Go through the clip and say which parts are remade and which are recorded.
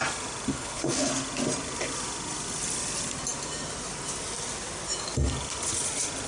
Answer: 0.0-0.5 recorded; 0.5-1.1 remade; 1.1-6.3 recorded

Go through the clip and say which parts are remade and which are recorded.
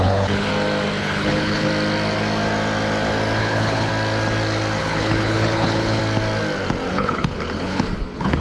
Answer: 0.0-0.5 remade; 0.5-1.0 recorded; 1.0-1.7 remade; 1.7-3.4 recorded; 3.4-3.9 remade; 3.9-4.8 recorded; 4.8-6.0 remade; 6.0-6.9 recorded; 6.9-8.4 remade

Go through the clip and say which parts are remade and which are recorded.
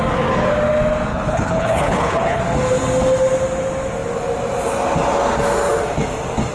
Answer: 0.0-1.1 recorded; 1.1-2.4 remade; 2.4-6.5 recorded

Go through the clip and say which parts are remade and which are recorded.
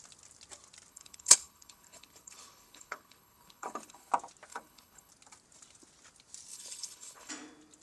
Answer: 0.0-0.9 recorded; 0.9-4.1 remade; 4.1-4.5 recorded; 4.5-5.1 remade; 5.1-6.5 recorded; 6.5-7.3 remade; 7.3-7.8 recorded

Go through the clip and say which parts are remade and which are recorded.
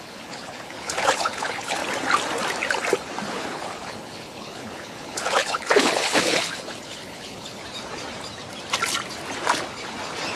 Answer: 0.0-1.8 remade; 1.8-3.3 recorded; 3.3-7.6 remade; 7.6-10.4 recorded